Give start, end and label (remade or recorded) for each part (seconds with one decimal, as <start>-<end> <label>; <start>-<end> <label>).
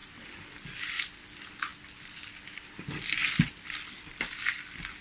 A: 0.0-5.0 recorded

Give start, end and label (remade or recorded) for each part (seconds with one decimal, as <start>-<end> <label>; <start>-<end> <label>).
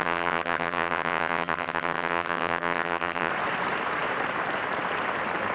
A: 0.0-3.3 remade; 3.3-5.5 recorded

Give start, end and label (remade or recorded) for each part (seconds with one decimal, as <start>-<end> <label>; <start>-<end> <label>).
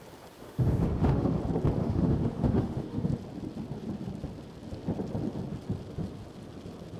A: 0.0-0.4 recorded; 0.4-1.4 remade; 1.4-1.8 recorded; 1.8-3.1 remade; 3.1-7.0 recorded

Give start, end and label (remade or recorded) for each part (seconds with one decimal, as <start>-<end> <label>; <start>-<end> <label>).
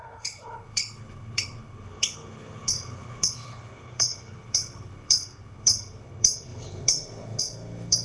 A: 0.0-8.0 remade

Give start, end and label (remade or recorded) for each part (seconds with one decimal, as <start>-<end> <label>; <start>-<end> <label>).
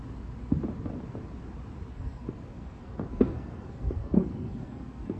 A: 0.0-1.9 recorded; 1.9-5.2 remade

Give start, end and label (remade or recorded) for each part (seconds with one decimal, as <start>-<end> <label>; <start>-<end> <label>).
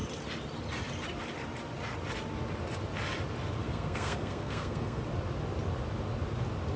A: 0.0-3.6 recorded; 3.6-5.0 remade; 5.0-6.8 recorded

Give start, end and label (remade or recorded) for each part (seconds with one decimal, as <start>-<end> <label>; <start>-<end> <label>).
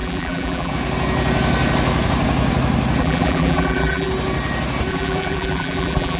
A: 0.0-0.7 remade; 0.7-3.0 recorded; 3.0-4.1 remade; 4.1-4.9 recorded; 4.9-6.2 remade